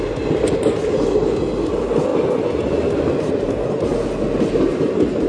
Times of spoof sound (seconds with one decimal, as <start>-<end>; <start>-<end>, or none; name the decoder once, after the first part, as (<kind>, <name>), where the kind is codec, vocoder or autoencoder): none